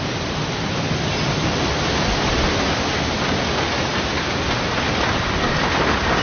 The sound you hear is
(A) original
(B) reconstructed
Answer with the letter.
A